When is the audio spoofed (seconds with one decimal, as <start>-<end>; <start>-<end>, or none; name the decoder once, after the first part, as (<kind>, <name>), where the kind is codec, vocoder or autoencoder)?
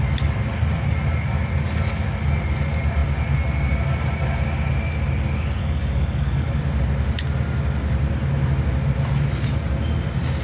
5.6-6.6 (codec, DAC)